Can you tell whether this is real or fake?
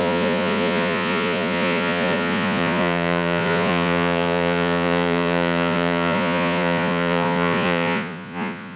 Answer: fake